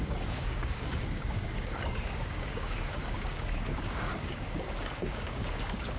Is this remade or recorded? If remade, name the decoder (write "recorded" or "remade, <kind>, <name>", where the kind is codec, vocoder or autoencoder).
remade, codec, DAC